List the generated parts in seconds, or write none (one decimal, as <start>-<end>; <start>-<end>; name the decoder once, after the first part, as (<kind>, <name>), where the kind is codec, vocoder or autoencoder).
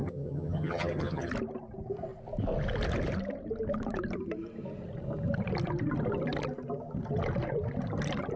0.0-1.3 (vocoder, HiFi-GAN)